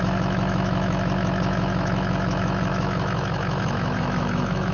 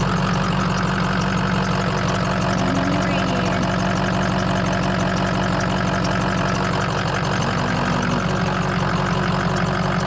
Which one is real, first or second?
second